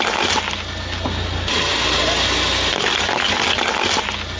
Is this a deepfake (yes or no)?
no